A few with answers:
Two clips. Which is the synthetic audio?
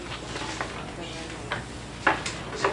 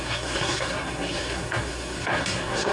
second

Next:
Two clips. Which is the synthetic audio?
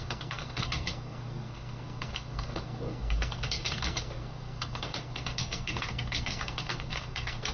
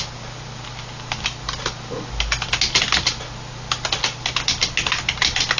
first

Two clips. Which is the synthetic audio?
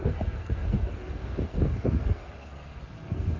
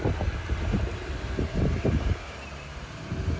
first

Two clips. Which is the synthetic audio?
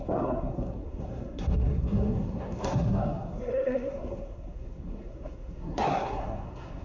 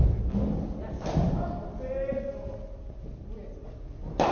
first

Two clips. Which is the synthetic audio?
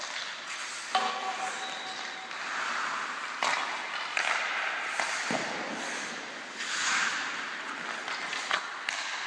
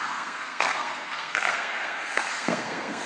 second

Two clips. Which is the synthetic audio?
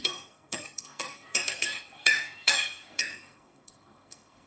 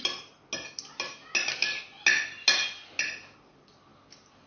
first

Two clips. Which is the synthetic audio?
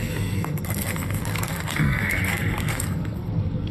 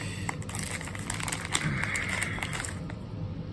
first